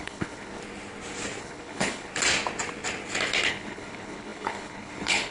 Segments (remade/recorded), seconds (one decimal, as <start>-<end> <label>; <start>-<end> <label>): 0.0-0.6 remade; 0.6-1.4 recorded; 1.4-2.1 remade; 2.1-3.5 recorded; 3.5-5.3 remade